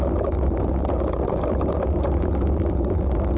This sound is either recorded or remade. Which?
recorded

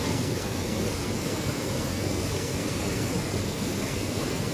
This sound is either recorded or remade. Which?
remade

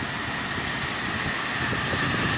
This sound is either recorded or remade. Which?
recorded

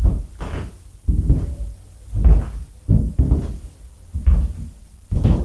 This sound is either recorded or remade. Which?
recorded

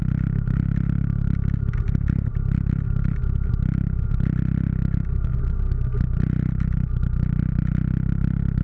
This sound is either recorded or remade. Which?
recorded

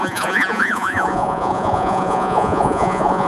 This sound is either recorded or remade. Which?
remade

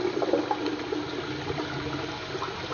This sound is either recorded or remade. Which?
recorded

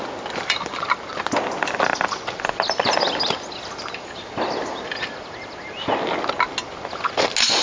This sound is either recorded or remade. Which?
recorded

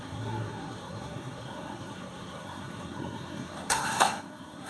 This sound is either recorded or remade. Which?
remade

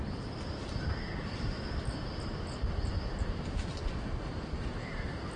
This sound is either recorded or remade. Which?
recorded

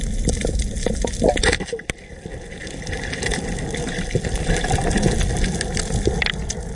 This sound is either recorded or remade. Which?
recorded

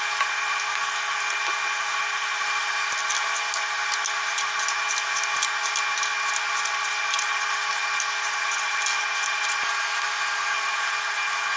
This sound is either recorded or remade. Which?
recorded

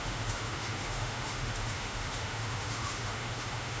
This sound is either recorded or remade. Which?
remade